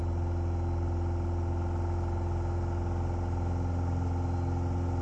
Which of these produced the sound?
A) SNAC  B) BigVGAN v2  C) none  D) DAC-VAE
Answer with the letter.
C